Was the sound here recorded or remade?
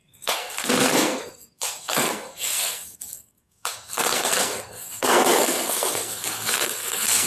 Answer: remade